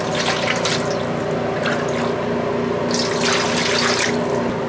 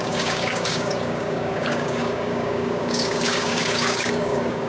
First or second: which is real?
first